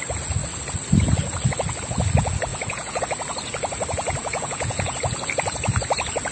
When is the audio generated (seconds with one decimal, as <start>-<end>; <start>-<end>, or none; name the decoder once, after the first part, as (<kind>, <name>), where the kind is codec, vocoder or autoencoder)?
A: 2.5-3.0 (vocoder, Vocos); 4.2-5.0

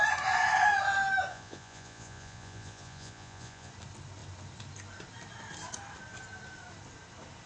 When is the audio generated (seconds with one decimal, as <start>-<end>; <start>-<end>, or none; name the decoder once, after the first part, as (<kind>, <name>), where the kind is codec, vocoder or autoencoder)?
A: 1.3-3.7 (vocoder, Vocos)

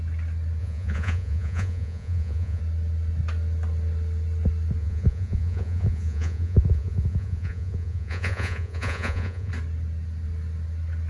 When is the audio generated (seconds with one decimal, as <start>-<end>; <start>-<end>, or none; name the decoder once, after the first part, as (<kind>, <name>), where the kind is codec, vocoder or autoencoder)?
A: 0.6-2.6 (vocoder, Vocos); 4.8-9.5

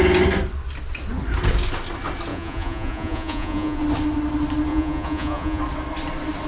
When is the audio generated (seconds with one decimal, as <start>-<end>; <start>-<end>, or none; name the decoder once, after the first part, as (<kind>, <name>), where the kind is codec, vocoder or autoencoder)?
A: 2.3-3.8 (vocoder, Vocos); 4.7-5.6

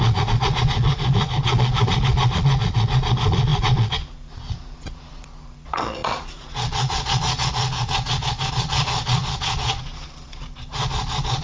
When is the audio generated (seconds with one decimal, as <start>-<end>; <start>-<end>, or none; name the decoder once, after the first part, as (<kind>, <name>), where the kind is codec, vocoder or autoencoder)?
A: 0.0-11.4 (vocoder, Vocos)

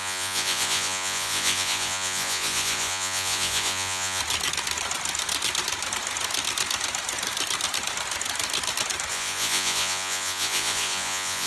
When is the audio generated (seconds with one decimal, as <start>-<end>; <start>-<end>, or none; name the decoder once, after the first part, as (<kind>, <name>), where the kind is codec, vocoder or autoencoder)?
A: 0.0-4.2 (vocoder, Vocos); 9.1-11.5

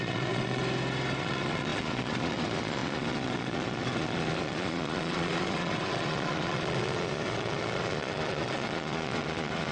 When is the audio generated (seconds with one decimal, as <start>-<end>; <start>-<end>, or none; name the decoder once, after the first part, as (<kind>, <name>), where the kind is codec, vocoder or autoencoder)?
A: 0.0-0.6 (vocoder, Vocos); 1.2-9.7